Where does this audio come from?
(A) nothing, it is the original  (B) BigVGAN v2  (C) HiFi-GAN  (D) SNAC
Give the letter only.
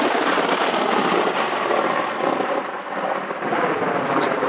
A